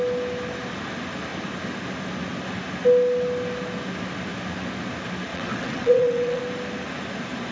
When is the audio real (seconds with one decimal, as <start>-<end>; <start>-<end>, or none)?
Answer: 0.0-5.3; 6.4-7.5